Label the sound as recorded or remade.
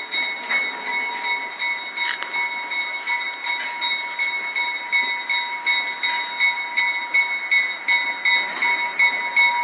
recorded